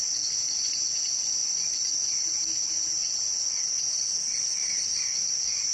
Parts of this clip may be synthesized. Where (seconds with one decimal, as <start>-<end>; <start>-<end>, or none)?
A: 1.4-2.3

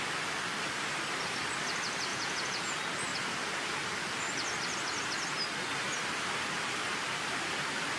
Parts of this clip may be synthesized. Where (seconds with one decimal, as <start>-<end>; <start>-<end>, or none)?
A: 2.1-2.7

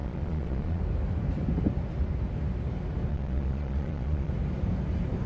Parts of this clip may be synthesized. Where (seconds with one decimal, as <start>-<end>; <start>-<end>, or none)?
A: 0.0-0.8; 3.1-4.3

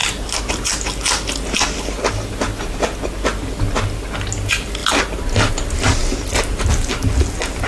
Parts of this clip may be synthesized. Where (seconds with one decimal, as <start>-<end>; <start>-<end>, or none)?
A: none

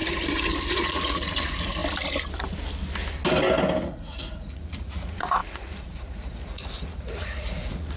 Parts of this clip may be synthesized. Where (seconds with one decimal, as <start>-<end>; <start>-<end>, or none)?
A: 0.7-1.8; 3.8-8.0